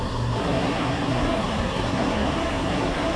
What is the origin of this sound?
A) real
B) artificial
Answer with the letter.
B